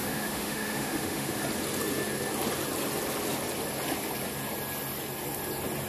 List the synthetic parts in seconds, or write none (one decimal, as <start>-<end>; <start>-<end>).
0.0-1.4